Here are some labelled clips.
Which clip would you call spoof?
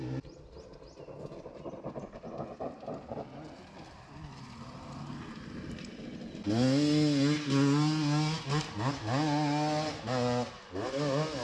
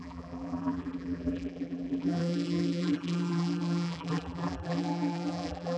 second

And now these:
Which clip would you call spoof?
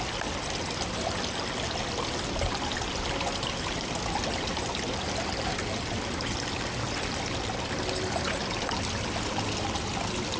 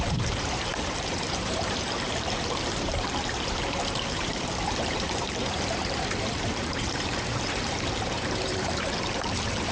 second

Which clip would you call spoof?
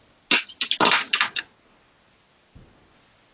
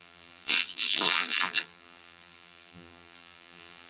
second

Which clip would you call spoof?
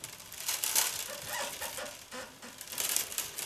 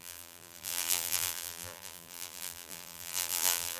second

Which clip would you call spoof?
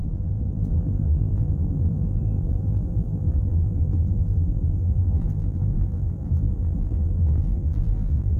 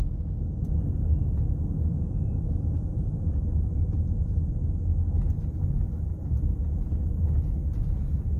first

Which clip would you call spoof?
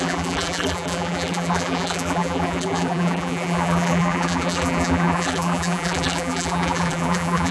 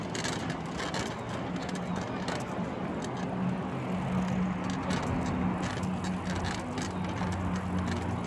first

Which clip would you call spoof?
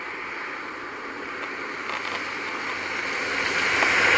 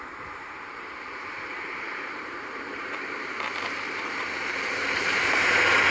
second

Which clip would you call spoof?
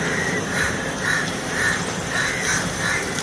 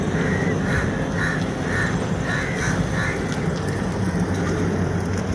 first